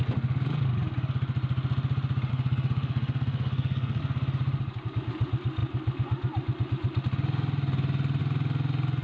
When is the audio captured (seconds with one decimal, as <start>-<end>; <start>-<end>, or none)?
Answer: 0.0-2.3; 4.0-9.0